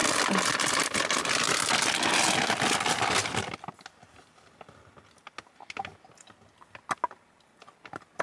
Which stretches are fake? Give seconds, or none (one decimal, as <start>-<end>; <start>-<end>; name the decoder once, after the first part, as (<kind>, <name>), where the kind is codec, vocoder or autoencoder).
none